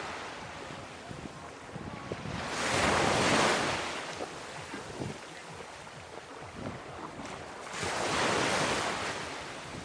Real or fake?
real